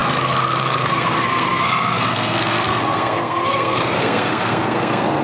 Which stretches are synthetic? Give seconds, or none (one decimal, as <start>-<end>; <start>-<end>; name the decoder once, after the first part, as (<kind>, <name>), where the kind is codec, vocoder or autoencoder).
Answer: 0.6-5.2 (codec, SNAC)